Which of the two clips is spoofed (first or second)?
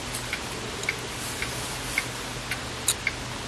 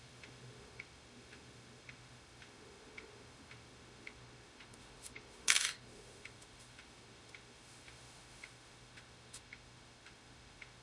second